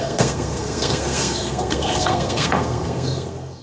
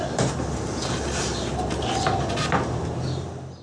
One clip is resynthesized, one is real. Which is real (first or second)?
second